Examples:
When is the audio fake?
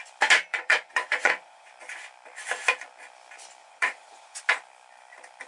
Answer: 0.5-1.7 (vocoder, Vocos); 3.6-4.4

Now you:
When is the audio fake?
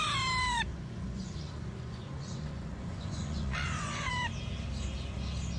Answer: 0.7-4.1 (vocoder, Vocos)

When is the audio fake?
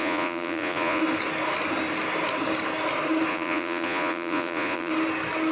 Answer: 0.0-1.0 (vocoder, Vocos); 3.3-4.9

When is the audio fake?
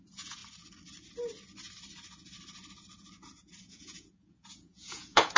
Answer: 0.0-0.4 (vocoder, Vocos); 3.6-5.4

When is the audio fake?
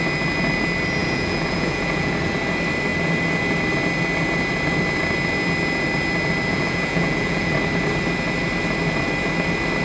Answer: 1.0-2.1 (vocoder, Vocos); 6.5-7.5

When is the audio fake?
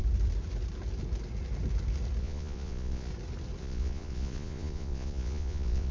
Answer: 2.2-3.1 (vocoder, Vocos); 3.6-5.9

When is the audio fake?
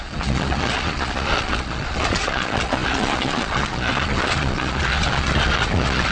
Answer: 0.0-6.1 (vocoder, Vocos)